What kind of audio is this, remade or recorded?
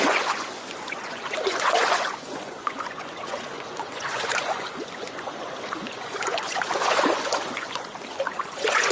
remade